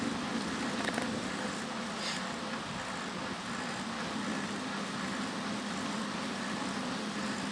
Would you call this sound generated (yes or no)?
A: no